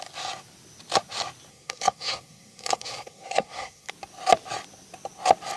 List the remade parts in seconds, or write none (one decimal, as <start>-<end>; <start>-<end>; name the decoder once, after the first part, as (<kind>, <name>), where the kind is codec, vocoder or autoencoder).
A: 1.5-3.9 (codec, SNAC)